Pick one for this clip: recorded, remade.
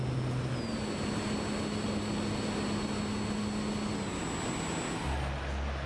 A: recorded